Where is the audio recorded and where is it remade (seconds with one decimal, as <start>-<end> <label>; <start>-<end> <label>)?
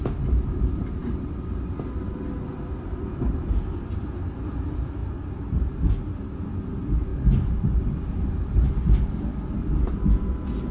0.0-10.7 recorded